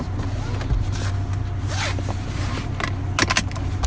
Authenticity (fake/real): real